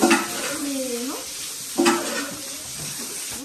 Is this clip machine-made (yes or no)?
no